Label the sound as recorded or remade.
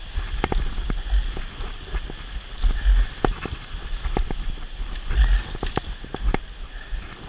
recorded